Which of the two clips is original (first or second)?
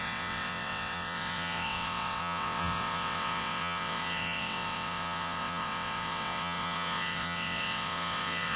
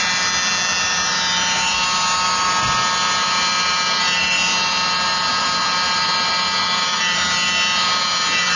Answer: second